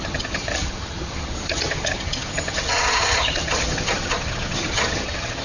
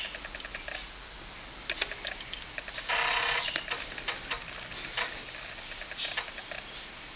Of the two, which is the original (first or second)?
second